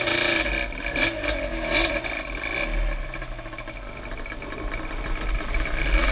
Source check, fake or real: real